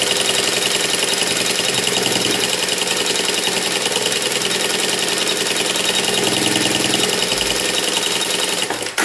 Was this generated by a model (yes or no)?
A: no